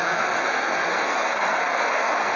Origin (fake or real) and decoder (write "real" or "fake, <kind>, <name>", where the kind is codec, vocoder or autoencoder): fake, codec, SNAC